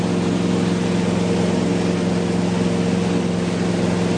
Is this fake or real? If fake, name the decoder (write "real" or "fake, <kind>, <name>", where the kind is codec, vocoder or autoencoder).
real